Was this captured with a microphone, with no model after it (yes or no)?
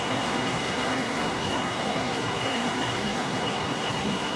no